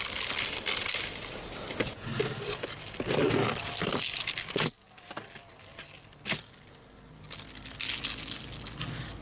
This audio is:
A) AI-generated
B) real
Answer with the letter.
B